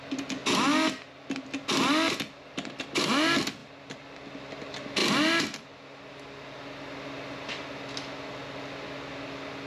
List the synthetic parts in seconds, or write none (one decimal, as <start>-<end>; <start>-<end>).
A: 5.0-6.0